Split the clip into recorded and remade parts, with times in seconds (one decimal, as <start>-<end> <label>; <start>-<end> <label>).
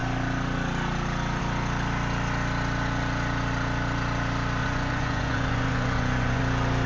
0.0-4.6 recorded; 4.6-6.4 remade; 6.4-6.9 recorded